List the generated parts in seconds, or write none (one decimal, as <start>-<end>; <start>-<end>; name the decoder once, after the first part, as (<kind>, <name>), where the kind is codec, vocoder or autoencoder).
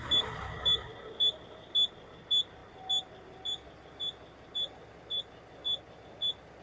none